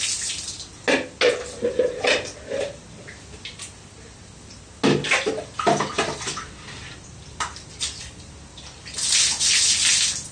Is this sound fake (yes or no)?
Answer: no